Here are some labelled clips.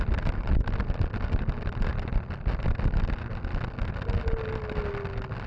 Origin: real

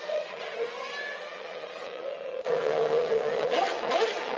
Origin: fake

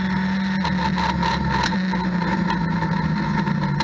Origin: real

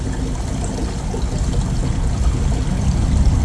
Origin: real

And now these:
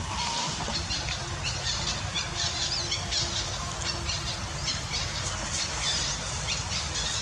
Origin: real